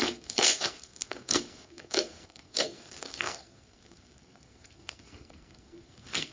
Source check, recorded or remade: remade